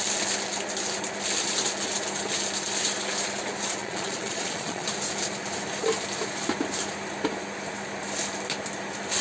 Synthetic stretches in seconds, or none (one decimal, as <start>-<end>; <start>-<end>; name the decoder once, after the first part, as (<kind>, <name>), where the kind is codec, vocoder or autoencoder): 3.8-4.9 (vocoder, Vocos)